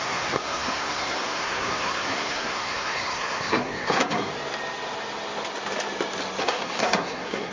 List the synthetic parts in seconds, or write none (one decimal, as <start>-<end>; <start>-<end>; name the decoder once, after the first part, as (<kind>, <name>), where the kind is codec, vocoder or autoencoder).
0.0-4.3 (codec, SNAC); 6.4-7.5